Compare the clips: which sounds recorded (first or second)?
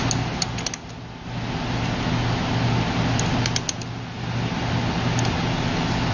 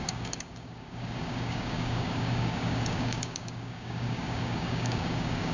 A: first